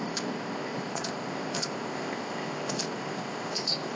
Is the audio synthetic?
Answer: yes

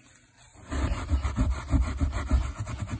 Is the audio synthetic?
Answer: no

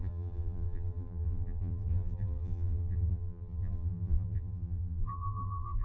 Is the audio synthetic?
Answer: yes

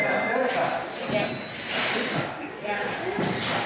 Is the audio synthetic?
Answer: no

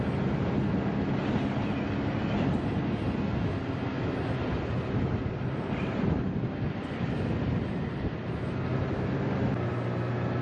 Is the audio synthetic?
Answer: no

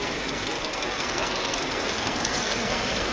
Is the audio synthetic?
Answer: yes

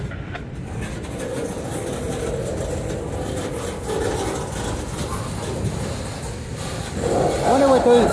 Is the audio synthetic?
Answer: no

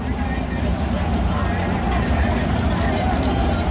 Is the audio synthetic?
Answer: no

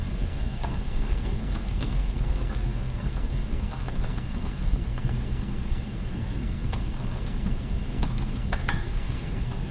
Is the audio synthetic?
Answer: yes